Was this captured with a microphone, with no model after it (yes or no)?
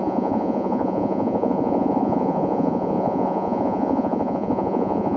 no